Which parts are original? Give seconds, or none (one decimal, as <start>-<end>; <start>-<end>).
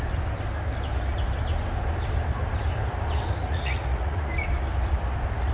0.0-3.4; 4.3-5.5